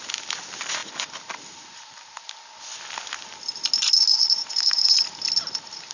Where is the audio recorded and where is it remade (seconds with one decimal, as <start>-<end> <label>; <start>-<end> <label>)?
0.0-4.1 recorded; 4.1-5.0 remade; 5.0-5.9 recorded

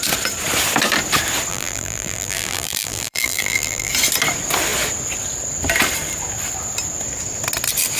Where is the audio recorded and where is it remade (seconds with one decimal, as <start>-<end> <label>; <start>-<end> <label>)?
0.0-1.5 recorded; 1.5-3.9 remade; 3.9-8.0 recorded

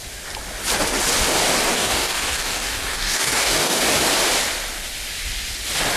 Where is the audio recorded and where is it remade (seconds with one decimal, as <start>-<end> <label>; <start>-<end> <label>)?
0.0-1.7 recorded; 1.7-3.8 remade; 3.8-6.0 recorded